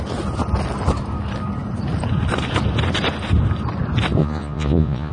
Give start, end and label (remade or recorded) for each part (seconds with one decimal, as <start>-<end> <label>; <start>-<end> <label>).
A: 0.0-4.2 recorded; 4.2-5.1 remade